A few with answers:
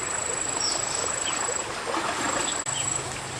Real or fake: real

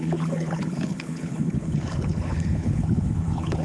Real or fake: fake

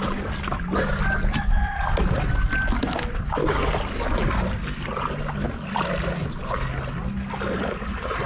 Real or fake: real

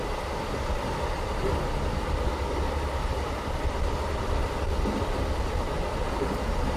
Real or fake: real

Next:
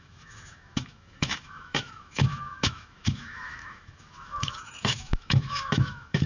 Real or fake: fake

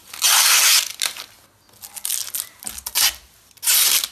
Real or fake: real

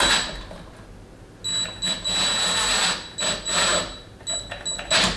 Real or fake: real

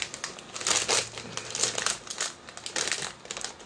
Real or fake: real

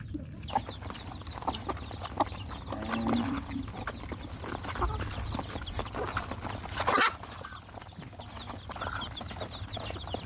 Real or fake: real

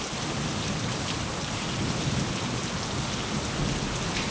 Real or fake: real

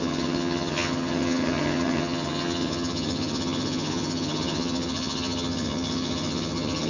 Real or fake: fake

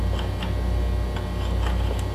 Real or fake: real